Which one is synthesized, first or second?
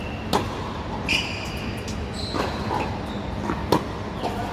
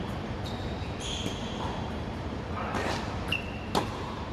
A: second